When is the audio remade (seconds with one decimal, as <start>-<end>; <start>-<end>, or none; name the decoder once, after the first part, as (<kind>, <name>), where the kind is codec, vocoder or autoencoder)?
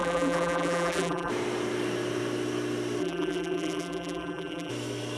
0.0-1.3 (vocoder, BigVGAN v2); 3.0-4.7